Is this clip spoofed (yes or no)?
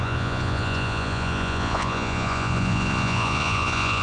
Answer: yes